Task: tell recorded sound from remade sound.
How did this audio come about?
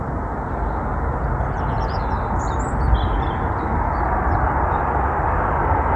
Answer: recorded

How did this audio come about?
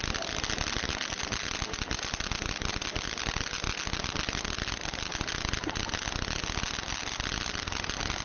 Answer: recorded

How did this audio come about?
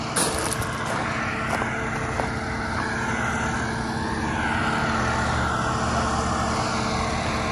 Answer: recorded